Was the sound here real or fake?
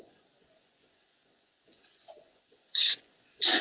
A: fake